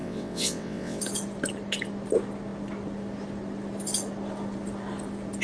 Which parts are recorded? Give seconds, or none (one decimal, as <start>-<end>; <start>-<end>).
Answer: 1.0-5.4